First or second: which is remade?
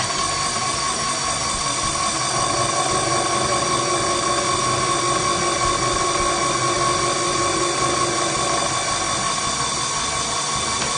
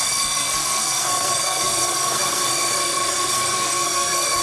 second